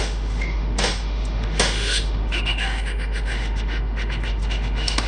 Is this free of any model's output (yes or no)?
no